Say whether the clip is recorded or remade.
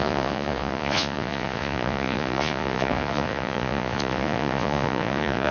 remade